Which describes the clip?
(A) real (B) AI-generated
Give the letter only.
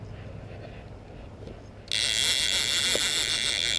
A